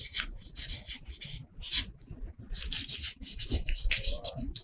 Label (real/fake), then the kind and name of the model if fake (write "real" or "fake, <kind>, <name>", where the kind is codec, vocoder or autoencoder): real